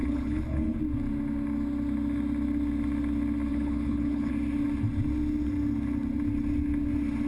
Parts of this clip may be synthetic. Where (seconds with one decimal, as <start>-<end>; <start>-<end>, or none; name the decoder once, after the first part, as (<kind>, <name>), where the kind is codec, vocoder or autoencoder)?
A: 0.0-0.8 (codec, HILCodec); 3.5-4.3